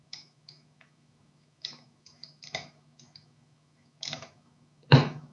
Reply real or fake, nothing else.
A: fake